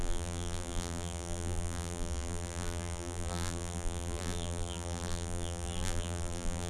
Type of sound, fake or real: fake